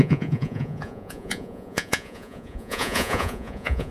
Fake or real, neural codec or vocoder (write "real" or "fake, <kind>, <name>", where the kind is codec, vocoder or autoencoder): fake, vocoder, Vocos